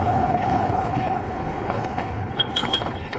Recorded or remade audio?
remade